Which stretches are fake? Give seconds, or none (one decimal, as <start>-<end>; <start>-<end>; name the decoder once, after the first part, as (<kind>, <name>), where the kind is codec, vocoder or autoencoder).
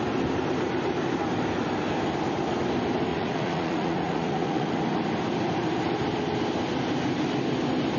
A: 3.1-4.7 (vocoder, Vocos)